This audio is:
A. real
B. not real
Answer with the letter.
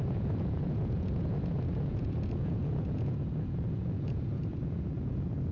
B